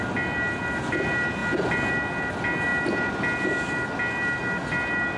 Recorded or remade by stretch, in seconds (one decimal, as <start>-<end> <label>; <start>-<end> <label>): 0.0-5.2 recorded